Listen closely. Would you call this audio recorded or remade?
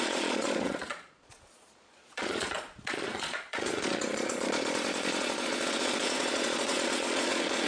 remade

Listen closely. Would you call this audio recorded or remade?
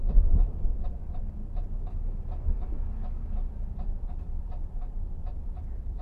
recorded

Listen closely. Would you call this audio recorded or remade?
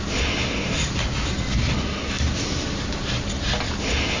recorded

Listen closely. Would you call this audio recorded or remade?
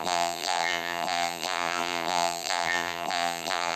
remade